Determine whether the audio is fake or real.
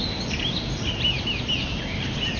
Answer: real